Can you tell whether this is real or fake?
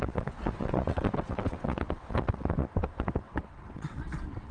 fake